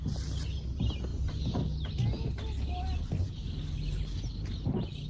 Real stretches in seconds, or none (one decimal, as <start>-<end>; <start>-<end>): 0.0-5.1